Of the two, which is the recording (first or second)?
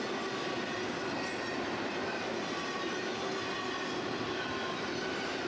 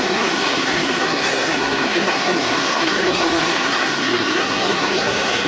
first